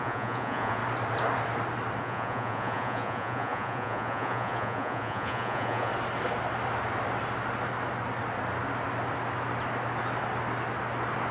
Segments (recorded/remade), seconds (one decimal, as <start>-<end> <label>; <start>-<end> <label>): 0.0-0.8 remade; 0.8-2.0 recorded; 2.0-5.9 remade; 5.9-11.3 recorded